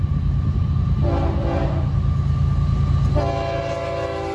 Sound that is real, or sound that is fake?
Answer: real